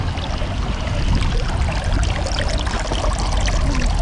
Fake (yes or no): no